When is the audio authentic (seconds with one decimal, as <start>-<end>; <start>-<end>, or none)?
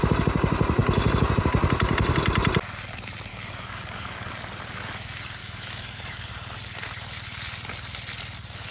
0.0-3.3; 4.3-5.4; 6.3-8.7